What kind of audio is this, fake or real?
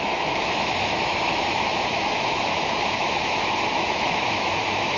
fake